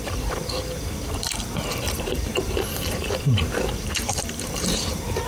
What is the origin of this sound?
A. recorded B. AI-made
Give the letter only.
B